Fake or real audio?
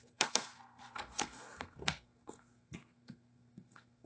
fake